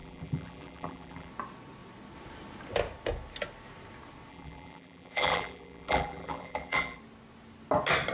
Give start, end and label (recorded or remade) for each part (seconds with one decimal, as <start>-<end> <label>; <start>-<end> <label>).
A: 0.0-1.3 remade; 1.3-4.3 recorded; 4.3-7.0 remade; 7.0-8.1 recorded